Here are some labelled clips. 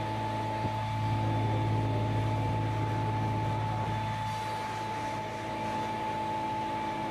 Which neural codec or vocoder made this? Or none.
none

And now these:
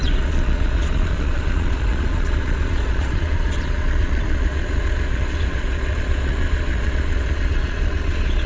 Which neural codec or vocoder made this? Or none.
vocoder, Vocos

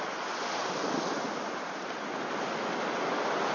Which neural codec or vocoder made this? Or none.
none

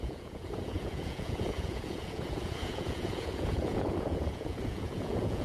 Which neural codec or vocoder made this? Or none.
vocoder, Vocos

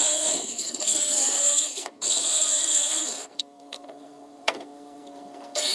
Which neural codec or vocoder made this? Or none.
codec, SNAC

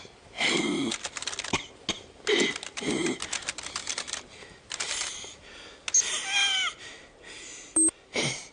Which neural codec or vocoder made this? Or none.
none